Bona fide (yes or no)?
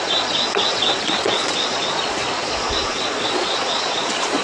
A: no